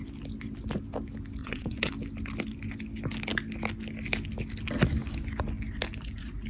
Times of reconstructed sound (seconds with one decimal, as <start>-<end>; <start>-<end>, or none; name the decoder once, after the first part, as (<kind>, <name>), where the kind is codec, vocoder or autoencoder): 1.4-1.9 (vocoder, WaveNeXt)